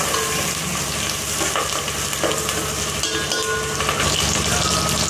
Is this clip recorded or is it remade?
recorded